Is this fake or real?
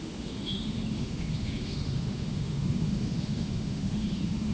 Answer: fake